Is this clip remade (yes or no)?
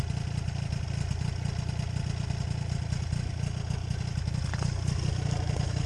no